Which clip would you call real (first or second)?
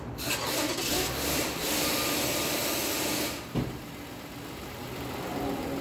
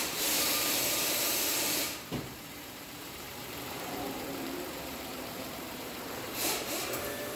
first